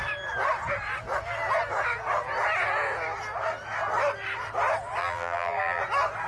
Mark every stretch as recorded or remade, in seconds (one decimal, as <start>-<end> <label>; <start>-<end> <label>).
0.0-5.0 recorded; 5.0-5.8 remade; 5.8-6.3 recorded